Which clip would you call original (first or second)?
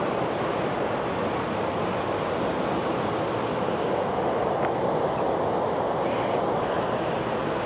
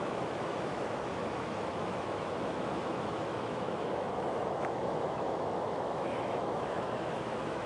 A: first